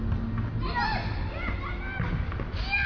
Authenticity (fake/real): real